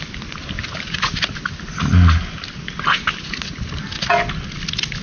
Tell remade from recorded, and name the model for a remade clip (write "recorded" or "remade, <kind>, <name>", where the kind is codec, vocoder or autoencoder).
recorded